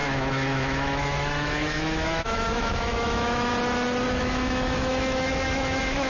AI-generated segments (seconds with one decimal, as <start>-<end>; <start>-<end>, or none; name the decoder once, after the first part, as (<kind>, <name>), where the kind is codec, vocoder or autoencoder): 0.0-3.5 (autoencoder, DAC-VAE); 4.1-6.1